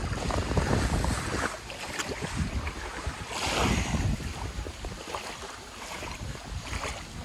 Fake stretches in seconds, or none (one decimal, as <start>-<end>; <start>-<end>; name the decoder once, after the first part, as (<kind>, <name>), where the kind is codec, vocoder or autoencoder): none